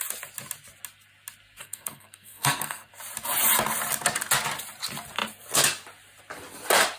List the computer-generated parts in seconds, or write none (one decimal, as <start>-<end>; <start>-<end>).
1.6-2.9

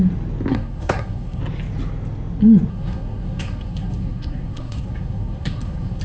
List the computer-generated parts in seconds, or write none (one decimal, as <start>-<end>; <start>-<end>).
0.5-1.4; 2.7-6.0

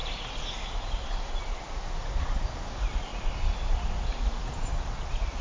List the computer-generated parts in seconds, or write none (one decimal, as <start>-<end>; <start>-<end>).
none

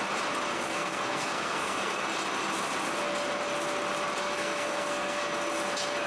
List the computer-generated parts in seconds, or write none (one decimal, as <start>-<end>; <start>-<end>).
0.5-2.0; 4.2-5.2

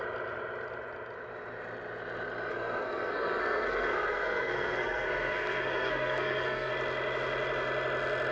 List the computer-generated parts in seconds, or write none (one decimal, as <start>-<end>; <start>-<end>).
2.5-6.7

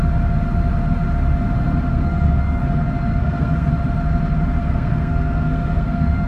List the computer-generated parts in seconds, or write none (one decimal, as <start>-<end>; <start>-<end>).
1.9-2.6; 3.1-3.7; 4.6-6.3

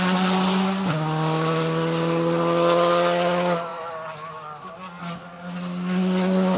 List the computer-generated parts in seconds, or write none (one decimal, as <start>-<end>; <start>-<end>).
none

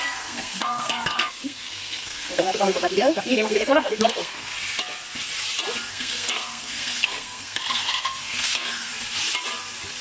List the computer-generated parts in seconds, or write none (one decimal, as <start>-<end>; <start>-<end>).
0.0-4.5; 5.9-8.9